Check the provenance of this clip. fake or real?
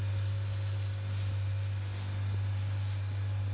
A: real